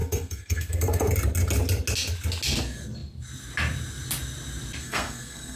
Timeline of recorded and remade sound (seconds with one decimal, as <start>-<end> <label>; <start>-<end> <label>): 0.0-1.1 remade; 1.1-4.8 recorded; 4.8-5.6 remade